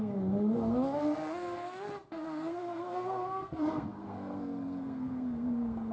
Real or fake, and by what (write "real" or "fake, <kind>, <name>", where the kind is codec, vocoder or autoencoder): fake, codec, SNAC